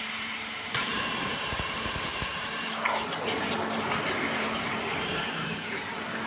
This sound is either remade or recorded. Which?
remade